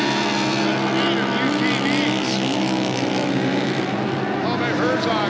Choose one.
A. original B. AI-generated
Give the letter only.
A